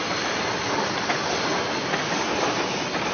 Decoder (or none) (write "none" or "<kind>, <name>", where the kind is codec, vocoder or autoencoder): none